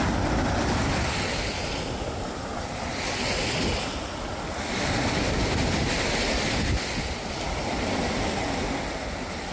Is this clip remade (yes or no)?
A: no